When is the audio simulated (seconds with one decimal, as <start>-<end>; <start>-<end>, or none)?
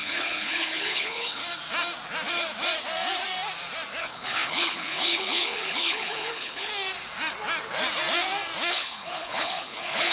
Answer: 0.0-1.4; 4.0-6.7; 8.7-10.1